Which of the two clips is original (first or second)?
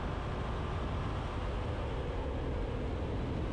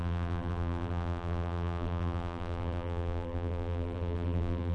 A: first